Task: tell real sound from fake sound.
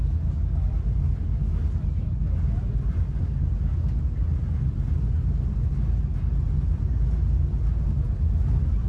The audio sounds real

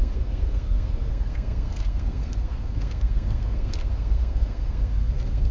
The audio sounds fake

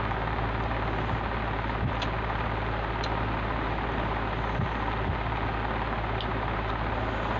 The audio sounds real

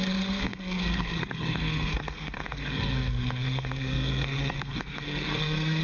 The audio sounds fake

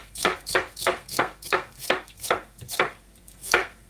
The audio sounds fake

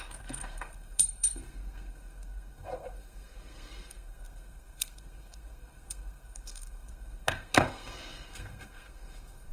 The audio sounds fake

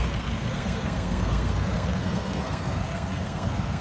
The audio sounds fake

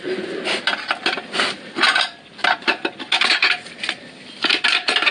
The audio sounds real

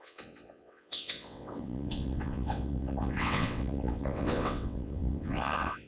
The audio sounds fake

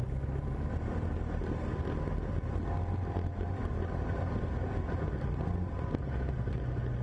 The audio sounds real